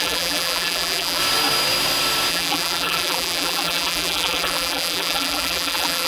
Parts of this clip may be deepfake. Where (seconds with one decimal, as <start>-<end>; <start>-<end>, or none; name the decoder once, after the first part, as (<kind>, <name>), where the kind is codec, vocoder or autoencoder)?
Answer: 0.0-1.2 (vocoder, BigVGAN v2); 2.3-6.1